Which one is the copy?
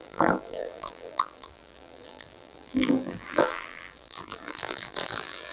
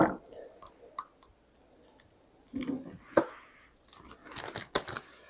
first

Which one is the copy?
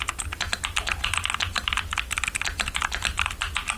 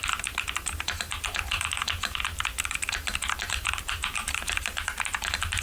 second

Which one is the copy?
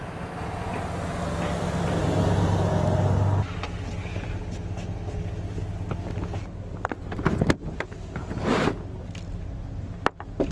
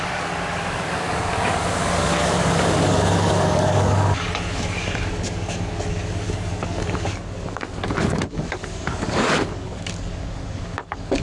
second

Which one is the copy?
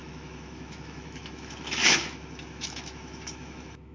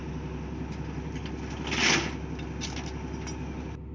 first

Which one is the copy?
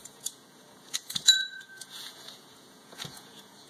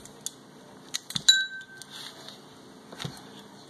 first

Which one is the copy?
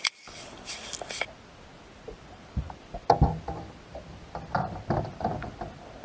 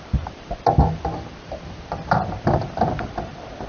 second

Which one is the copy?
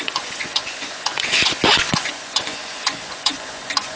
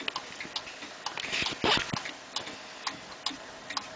first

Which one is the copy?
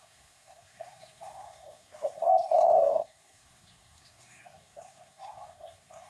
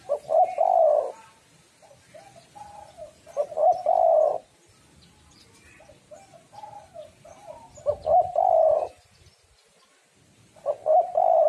first